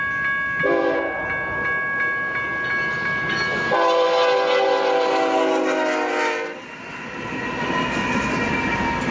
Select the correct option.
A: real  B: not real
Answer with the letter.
A